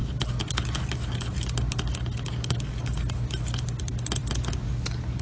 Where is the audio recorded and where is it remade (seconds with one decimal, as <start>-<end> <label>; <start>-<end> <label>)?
0.0-5.2 recorded